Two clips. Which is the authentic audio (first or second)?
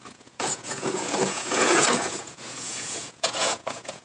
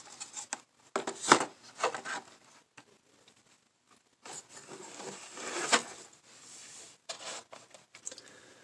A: second